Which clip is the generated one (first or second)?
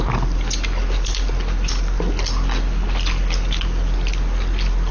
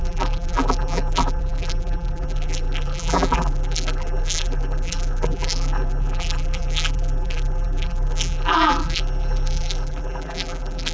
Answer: second